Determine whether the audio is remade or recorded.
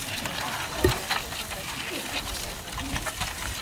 recorded